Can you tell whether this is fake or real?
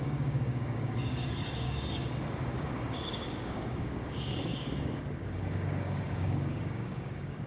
fake